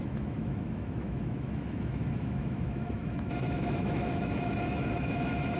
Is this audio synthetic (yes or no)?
yes